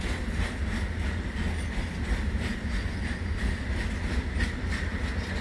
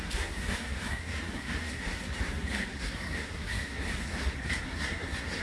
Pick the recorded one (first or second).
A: first